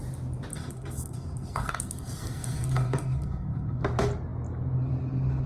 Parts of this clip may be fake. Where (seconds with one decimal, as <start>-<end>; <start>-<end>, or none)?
0.5-3.8